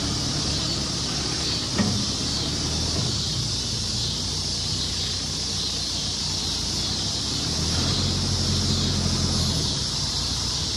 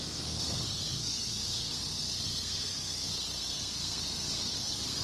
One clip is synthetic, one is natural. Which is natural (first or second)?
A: first